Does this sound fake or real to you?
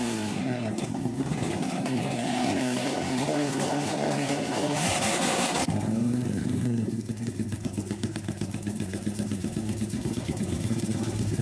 fake